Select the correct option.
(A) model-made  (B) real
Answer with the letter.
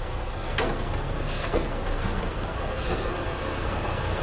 A